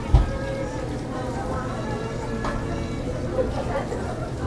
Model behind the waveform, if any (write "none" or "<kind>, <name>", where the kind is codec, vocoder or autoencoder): none